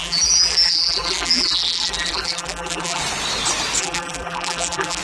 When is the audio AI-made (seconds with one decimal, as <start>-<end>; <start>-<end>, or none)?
0.0-3.0; 3.8-5.0